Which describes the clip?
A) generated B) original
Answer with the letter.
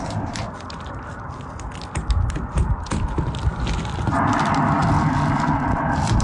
B